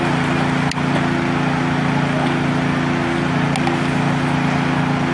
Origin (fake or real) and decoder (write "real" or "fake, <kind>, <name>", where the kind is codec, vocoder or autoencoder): real